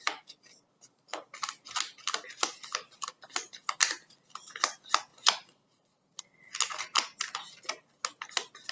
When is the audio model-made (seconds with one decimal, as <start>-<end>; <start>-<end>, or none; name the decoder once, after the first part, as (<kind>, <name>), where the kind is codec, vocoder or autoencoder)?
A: 5.1-6.2 (vocoder, Vocos)